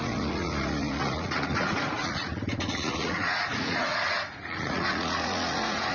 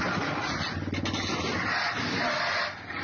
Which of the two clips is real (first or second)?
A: second